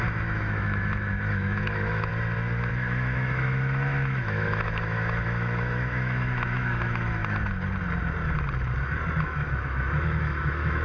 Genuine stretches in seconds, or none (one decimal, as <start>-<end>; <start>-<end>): 2.1-2.7; 7.2-9.2